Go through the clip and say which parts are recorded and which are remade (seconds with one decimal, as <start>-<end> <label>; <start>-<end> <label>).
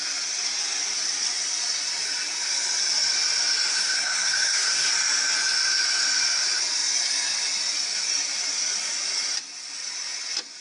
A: 0.0-3.7 recorded; 3.7-4.9 remade; 4.9-10.6 recorded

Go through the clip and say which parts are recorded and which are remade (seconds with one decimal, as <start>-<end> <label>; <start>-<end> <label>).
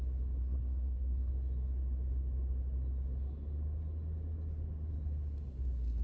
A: 0.0-0.4 recorded; 0.4-1.3 remade; 1.3-6.0 recorded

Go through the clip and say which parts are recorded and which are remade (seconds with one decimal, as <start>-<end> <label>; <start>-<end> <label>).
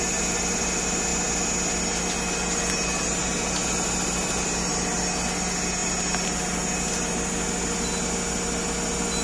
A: 0.0-9.2 recorded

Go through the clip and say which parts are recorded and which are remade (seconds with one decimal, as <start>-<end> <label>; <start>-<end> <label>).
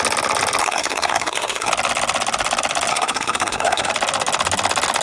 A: 0.0-0.6 recorded; 0.6-1.7 remade; 1.7-2.9 recorded; 2.9-3.9 remade; 3.9-5.0 recorded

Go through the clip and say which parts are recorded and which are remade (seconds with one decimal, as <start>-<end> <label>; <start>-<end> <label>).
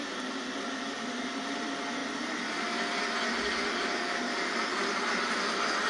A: 0.0-5.9 recorded